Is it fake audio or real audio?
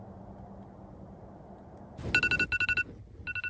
real